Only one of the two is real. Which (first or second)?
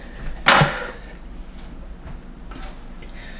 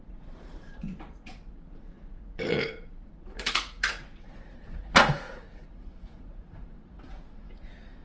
first